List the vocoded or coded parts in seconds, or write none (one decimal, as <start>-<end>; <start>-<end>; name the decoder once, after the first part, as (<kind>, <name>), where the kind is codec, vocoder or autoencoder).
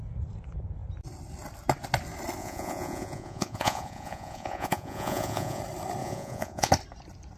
2.4-5.6 (vocoder, Vocos); 6.0-6.7